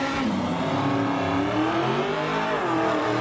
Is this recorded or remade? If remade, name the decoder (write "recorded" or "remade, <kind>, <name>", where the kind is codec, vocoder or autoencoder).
remade, vocoder, BigVGAN v2